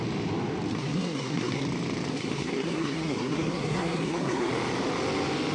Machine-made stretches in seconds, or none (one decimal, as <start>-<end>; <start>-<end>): 0.7-1.6; 2.1-4.5